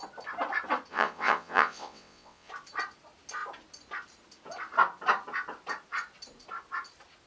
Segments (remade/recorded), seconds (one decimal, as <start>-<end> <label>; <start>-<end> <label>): 0.0-0.9 recorded; 0.9-2.5 remade; 2.5-7.3 recorded